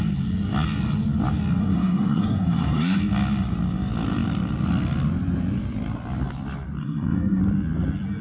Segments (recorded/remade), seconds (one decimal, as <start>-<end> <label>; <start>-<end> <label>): 0.0-1.6 recorded; 1.6-3.0 remade; 3.0-6.8 recorded; 6.8-7.4 remade; 7.4-8.2 recorded